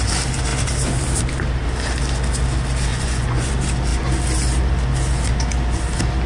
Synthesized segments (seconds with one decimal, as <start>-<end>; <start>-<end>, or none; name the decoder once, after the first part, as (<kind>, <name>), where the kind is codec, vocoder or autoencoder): 2.9-3.5 (vocoder, Vocos)